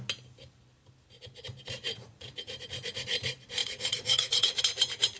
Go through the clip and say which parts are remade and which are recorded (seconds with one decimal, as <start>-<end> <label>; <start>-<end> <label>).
0.0-1.8 recorded; 1.8-2.3 remade; 2.3-3.6 recorded; 3.6-4.6 remade; 4.6-5.2 recorded